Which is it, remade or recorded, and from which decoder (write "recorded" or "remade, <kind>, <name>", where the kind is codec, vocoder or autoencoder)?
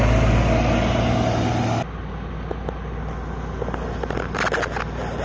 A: recorded